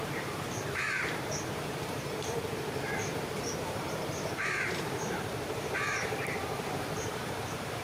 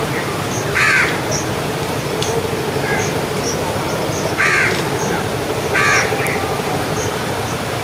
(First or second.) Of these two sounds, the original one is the second